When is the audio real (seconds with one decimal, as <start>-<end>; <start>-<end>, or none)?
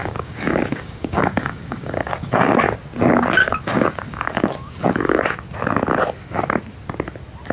2.5-3.4; 5.2-7.5